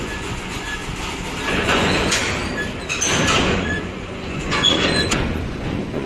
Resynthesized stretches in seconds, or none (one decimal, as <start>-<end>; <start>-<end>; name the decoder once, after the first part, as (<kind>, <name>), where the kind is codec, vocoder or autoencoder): 0.0-0.8 (vocoder, Vocos); 1.5-2.2; 3.4-6.1